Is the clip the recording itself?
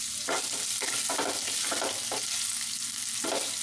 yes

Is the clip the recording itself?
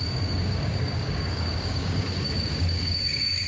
no